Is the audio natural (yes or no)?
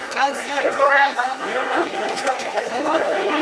no